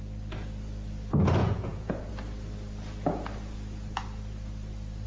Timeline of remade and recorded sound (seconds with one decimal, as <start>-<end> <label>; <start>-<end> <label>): 0.0-1.4 recorded; 1.4-2.1 remade; 2.1-5.1 recorded